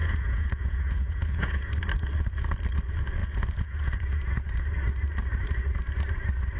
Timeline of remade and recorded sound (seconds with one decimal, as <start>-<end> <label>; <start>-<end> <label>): 0.0-1.5 remade; 1.5-3.2 recorded; 3.2-4.5 remade; 4.5-6.6 recorded